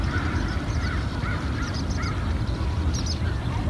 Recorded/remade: recorded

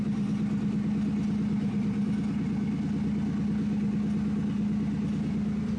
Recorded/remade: recorded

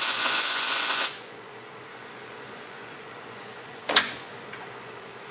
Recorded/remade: remade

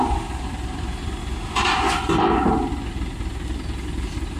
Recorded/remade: recorded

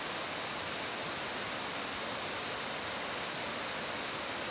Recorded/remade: recorded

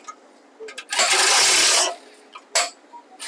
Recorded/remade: recorded